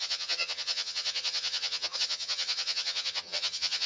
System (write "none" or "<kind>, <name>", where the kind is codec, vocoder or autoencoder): vocoder, HiFi-GAN